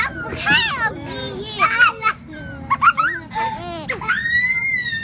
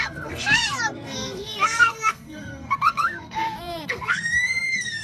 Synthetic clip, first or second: second